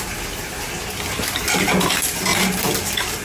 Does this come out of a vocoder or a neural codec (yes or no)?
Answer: no